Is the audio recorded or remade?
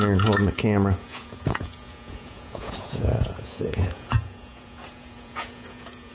remade